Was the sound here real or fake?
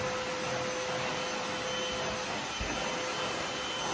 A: real